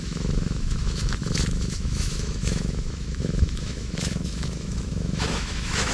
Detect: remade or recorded remade